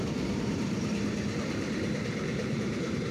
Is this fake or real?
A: fake